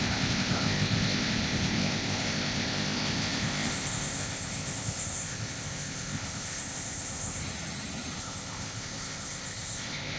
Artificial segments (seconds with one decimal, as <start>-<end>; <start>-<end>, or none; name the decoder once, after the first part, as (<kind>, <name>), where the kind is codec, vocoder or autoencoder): 0.0-7.4 (codec, ZipCodec); 8.2-10.2